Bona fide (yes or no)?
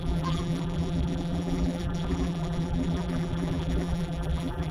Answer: no